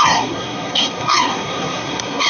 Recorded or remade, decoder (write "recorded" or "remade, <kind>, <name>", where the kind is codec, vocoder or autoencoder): remade, codec, SNAC